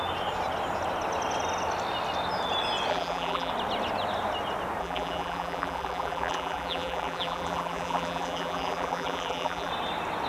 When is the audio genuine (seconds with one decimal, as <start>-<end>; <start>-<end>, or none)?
0.0-2.9; 3.5-4.8; 9.7-10.3

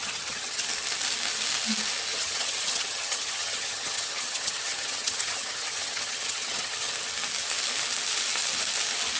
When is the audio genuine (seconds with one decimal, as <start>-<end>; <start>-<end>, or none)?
0.6-2.1; 6.9-9.2

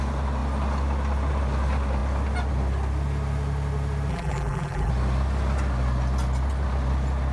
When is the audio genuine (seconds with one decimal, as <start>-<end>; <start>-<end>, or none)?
0.0-4.1; 4.9-7.3

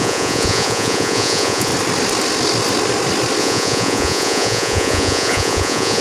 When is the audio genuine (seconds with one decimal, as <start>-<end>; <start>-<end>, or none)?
1.7-3.4